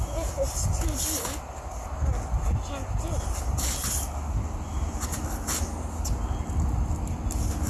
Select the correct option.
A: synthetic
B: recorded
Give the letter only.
B